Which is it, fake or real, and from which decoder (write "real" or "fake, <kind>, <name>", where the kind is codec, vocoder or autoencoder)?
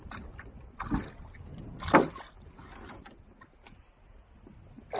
real